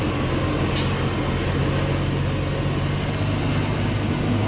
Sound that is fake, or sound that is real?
real